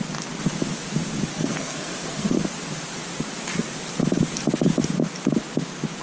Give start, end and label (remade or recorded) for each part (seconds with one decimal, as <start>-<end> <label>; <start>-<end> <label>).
0.0-1.3 recorded; 1.3-2.4 remade; 2.4-6.0 recorded